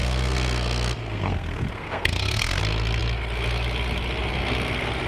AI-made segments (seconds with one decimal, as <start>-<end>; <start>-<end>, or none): 0.0-2.6